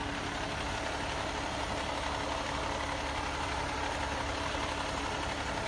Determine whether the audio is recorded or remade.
recorded